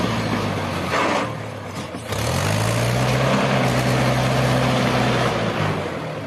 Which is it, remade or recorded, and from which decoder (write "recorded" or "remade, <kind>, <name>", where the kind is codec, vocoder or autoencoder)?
recorded